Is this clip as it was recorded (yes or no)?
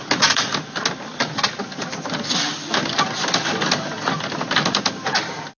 yes